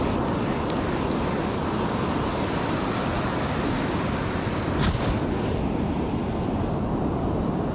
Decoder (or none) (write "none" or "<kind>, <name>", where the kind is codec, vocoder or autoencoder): none